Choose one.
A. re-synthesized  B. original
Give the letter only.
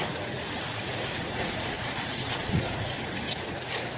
A